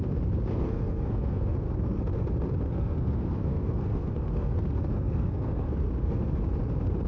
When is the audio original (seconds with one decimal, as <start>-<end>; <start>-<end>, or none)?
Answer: 0.0-0.5; 2.0-2.7; 6.4-7.1